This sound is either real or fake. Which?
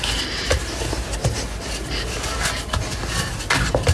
real